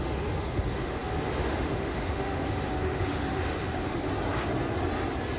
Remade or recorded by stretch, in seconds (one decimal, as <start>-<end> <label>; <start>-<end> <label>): 0.0-4.1 remade; 4.1-5.4 recorded